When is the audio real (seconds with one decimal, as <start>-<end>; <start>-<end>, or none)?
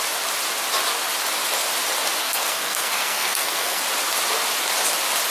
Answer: 0.0-2.2; 3.8-5.3